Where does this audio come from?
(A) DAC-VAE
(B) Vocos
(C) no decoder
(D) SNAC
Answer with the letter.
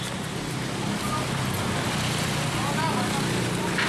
C